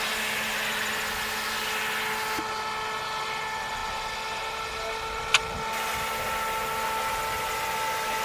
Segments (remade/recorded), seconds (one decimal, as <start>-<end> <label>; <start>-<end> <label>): 0.0-8.2 recorded